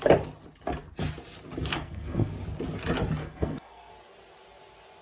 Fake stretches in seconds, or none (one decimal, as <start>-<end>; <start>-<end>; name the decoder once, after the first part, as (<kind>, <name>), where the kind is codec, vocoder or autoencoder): 1.7-2.3 (codec, SNAC); 3.2-3.9